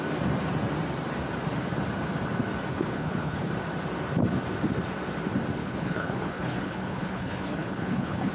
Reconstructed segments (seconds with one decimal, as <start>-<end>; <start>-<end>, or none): 2.7-3.5; 5.6-8.3